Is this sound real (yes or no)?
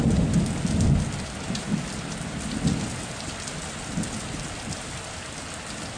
yes